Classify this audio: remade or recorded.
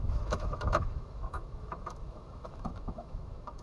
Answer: remade